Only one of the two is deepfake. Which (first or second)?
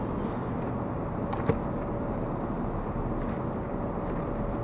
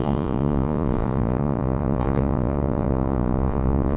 second